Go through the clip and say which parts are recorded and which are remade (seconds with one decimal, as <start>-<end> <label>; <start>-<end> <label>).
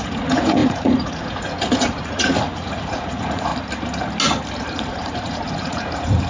0.0-3.5 remade; 3.5-4.6 recorded; 4.6-6.3 remade